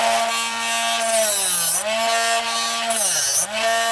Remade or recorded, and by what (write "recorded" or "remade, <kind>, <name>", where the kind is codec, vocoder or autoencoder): recorded